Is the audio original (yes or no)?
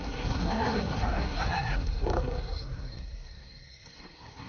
no